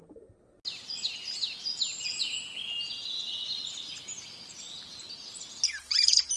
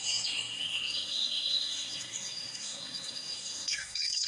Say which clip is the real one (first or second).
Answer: first